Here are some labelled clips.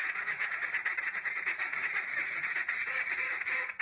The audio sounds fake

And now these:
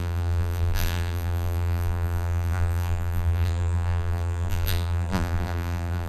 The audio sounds fake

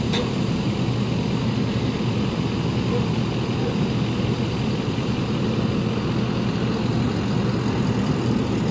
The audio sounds real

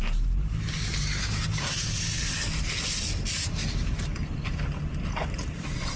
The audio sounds real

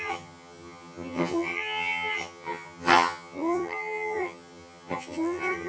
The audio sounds fake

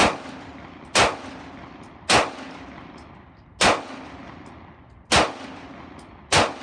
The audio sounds real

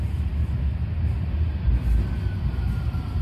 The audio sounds real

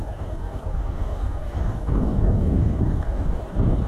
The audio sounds fake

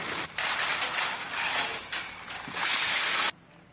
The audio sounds real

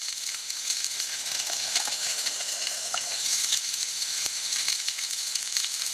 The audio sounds fake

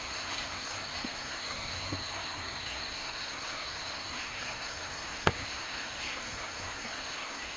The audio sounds fake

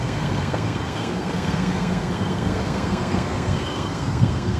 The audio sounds fake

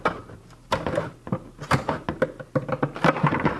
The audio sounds real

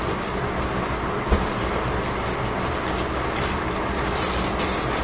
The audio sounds real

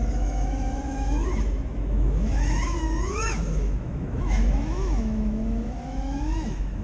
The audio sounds fake